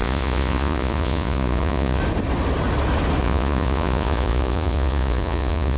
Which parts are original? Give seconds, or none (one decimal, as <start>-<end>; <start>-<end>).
2.0-3.2